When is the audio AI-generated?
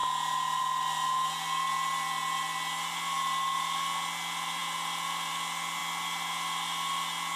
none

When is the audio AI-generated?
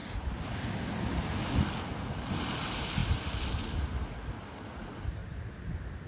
none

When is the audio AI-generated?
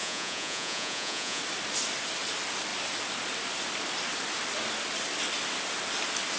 0.0-1.4 (vocoder, Vocos)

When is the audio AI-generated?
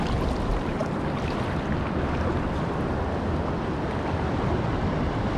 none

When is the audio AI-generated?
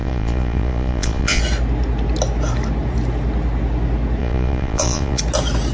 0.0-1.4 (vocoder, Vocos); 4.2-5.2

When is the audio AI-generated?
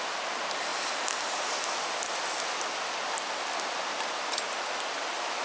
none